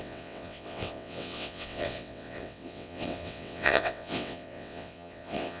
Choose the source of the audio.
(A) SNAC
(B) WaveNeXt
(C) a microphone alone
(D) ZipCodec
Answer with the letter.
B